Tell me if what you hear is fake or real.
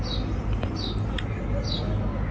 real